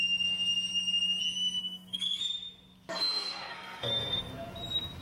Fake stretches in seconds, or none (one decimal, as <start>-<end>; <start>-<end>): 0.7-1.2; 1.6-2.2; 3.5-4.3